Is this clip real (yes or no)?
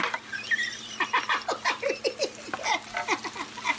yes